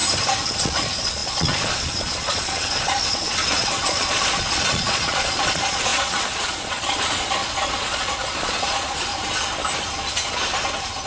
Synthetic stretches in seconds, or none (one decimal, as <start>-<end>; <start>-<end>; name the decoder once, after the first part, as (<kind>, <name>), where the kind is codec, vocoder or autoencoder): 0.6-9.1 (vocoder, Vocos)